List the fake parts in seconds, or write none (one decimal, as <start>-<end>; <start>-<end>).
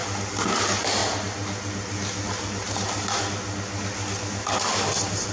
0.5-1.0; 4.2-5.3